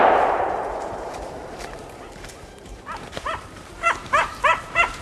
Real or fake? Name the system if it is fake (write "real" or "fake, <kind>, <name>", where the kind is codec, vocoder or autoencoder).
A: fake, vocoder, BigVGAN v2